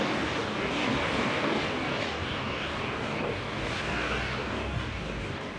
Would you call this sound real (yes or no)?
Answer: no